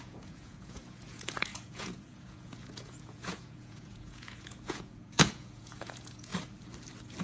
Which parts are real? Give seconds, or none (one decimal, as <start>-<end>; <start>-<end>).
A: 6.3-7.2